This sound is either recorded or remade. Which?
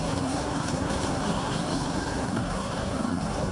remade